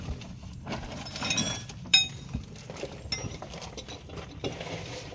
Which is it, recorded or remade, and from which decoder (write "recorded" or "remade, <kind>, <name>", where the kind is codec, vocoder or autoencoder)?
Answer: recorded